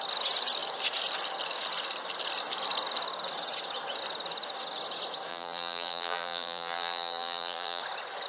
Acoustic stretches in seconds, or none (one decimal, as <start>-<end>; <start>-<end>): 0.0-5.3; 7.8-8.3